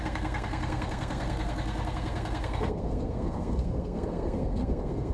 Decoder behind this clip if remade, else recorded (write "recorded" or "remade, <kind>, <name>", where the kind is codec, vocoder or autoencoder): remade, codec, SNAC